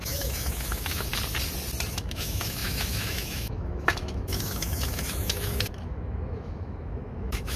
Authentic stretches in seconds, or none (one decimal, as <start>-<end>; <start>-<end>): 1.1-1.9